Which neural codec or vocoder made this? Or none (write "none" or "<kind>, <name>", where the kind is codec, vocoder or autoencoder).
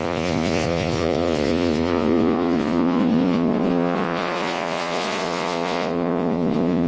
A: vocoder, Vocos